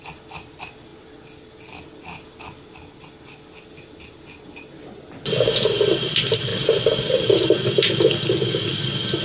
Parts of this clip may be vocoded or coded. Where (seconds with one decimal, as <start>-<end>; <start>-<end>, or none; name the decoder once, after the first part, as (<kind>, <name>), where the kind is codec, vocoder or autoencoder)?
none